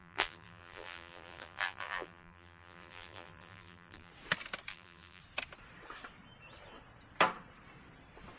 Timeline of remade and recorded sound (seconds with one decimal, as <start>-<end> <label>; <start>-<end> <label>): 0.0-4.1 remade; 4.1-4.7 recorded; 4.7-5.2 remade; 5.2-8.4 recorded

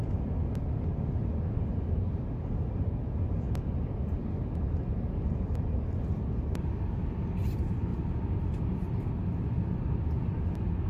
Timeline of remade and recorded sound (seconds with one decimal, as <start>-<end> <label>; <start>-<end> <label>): 0.0-10.9 recorded

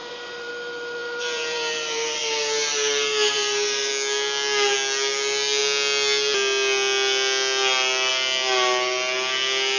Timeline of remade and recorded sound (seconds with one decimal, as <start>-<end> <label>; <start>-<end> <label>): 0.0-0.5 remade; 0.5-1.0 recorded; 1.0-3.9 remade; 3.9-9.8 recorded

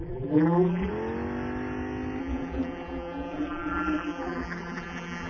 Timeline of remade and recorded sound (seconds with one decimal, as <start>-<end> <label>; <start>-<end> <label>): 0.0-0.9 remade; 0.9-2.2 recorded; 2.2-5.3 remade

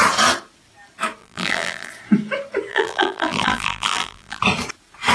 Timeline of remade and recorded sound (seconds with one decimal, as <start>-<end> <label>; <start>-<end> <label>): 0.0-1.2 recorded; 1.2-1.9 remade; 1.9-2.7 recorded; 2.7-4.4 remade; 4.4-5.1 recorded